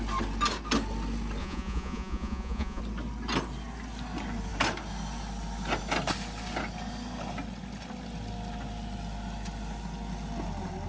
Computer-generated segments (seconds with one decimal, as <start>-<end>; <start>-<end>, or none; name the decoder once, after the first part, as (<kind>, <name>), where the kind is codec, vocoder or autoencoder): 1.4-2.8 (vocoder, Vocos)